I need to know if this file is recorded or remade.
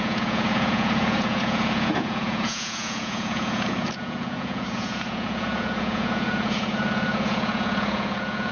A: remade